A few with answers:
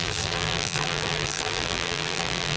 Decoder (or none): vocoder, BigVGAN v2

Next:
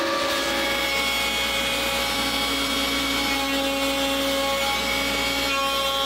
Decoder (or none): none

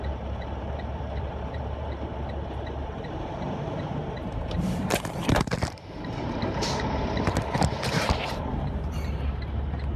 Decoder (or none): vocoder, BigVGAN v2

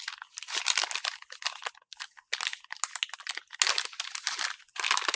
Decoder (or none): none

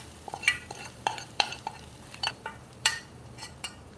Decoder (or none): vocoder, BigVGAN v2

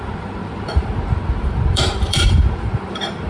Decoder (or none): vocoder, BigVGAN v2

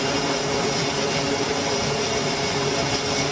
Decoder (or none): none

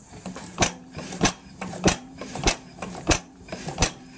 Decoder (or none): vocoder, BigVGAN v2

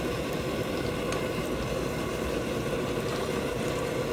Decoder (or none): none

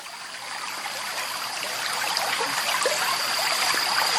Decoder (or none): none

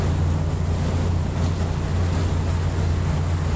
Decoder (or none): none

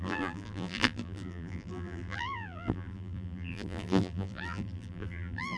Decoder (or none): vocoder, BigVGAN v2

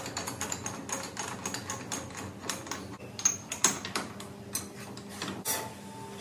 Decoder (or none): none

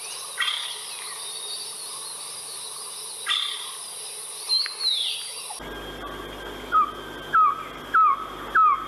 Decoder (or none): none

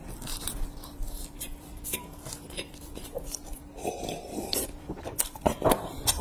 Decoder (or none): vocoder, BigVGAN v2